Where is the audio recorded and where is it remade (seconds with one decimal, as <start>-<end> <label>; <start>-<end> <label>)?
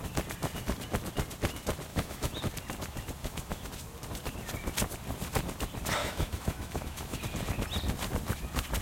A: 0.0-1.9 recorded; 1.9-2.4 remade; 2.4-3.2 recorded; 3.2-3.7 remade; 3.7-6.0 recorded; 6.0-7.2 remade; 7.2-8.8 recorded